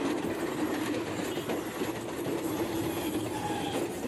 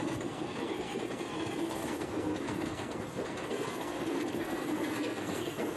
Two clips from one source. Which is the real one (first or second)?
first